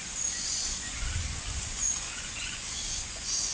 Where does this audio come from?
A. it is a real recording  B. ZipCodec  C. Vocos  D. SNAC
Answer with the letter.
C